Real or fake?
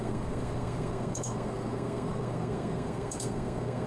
fake